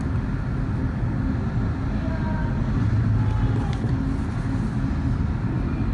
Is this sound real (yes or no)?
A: yes